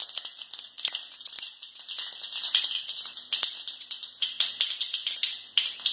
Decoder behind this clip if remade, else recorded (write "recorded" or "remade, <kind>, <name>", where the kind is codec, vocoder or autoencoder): recorded